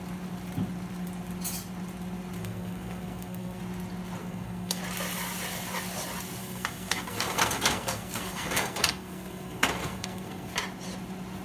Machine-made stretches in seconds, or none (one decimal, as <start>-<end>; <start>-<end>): 2.4-3.6; 4.2-4.8; 6.4-10.5